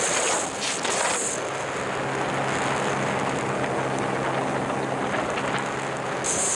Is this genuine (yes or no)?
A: yes